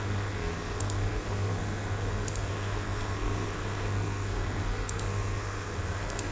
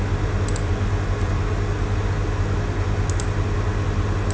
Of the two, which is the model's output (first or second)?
first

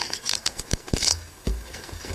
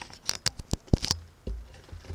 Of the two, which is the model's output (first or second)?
first